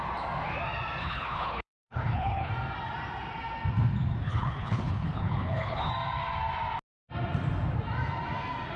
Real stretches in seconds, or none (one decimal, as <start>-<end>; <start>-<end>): 0.0-1.0; 2.5-4.2; 5.9-8.8